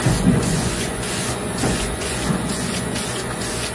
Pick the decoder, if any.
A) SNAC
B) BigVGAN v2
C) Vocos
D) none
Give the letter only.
C